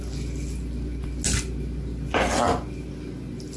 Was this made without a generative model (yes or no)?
yes